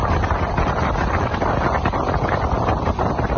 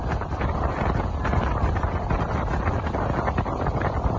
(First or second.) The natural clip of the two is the second